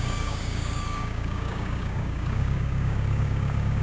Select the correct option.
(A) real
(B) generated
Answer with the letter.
B